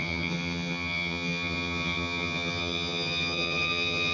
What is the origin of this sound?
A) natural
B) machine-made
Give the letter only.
B